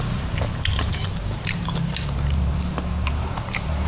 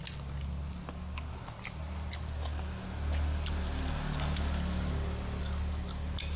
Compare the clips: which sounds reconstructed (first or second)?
first